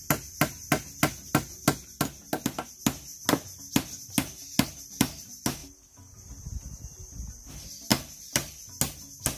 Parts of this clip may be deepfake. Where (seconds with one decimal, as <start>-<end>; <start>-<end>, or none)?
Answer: none